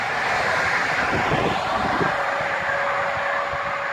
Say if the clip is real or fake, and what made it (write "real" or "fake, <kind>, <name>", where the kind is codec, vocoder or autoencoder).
real